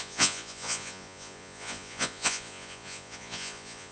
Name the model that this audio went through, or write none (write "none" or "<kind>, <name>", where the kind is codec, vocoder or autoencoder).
vocoder, Vocos